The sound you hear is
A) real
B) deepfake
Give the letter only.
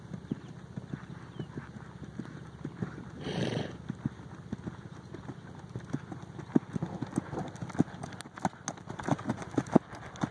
A